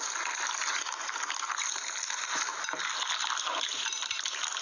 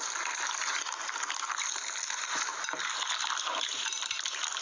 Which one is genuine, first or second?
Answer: first